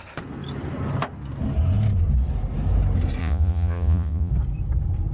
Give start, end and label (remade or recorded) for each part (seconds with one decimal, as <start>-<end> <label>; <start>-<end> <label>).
0.0-3.2 recorded; 3.2-4.3 remade; 4.3-5.1 recorded